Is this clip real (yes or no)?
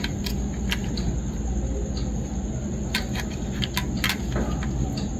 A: yes